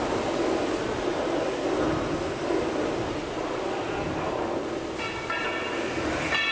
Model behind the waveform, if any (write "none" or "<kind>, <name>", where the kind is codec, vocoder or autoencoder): none